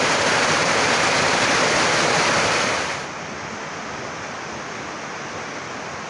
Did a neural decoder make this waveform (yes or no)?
no